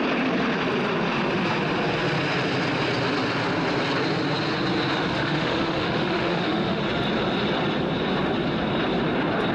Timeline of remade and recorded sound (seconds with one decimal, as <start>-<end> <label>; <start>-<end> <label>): 0.0-5.1 recorded; 5.1-6.8 remade; 6.8-9.5 recorded